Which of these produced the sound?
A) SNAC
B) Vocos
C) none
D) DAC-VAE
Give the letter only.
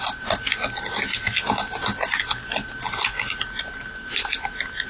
C